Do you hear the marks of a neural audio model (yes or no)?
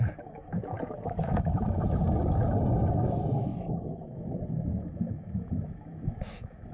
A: yes